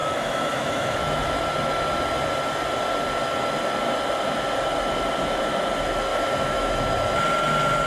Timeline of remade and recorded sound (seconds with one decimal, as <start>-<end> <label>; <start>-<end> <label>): 0.0-1.4 remade; 1.4-6.1 recorded; 6.1-6.7 remade; 6.7-7.9 recorded

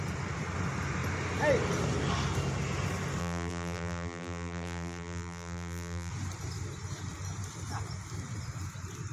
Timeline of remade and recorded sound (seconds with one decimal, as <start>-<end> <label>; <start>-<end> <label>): 0.0-3.2 recorded; 3.2-6.1 remade; 6.1-9.1 recorded

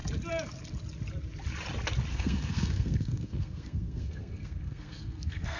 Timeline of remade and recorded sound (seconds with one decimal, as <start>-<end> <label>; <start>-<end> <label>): 0.0-2.1 recorded; 2.1-5.6 remade

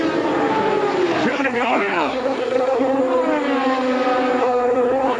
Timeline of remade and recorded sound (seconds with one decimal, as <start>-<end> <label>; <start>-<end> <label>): 0.0-1.3 recorded; 1.3-3.0 remade; 3.0-4.4 recorded; 4.4-5.2 remade